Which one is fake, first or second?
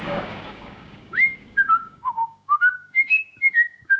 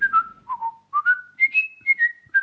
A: first